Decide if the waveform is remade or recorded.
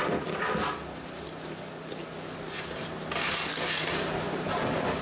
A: recorded